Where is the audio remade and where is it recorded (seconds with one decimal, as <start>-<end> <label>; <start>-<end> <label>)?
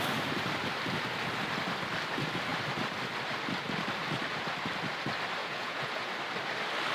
0.0-5.4 recorded; 5.4-6.1 remade; 6.1-6.9 recorded